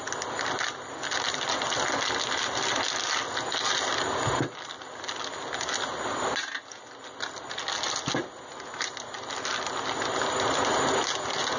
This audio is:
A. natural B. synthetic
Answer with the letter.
A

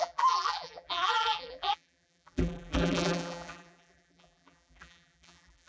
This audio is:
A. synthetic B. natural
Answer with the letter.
A